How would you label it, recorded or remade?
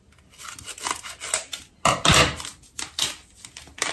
recorded